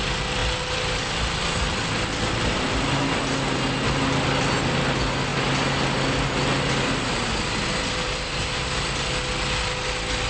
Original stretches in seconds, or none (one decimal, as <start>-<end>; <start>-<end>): 0.0-10.3